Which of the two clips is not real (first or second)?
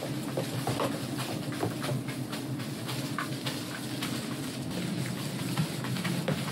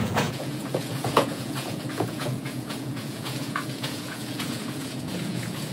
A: second